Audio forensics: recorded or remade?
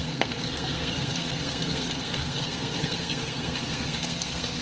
remade